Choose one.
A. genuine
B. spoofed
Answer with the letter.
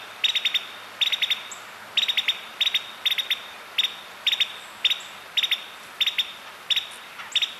A